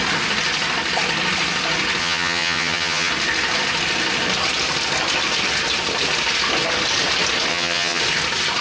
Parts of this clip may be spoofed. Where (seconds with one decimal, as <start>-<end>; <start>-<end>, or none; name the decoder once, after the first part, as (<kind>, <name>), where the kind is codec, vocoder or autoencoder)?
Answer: 2.0-3.1 (vocoder, HiFi-GAN); 7.5-8.0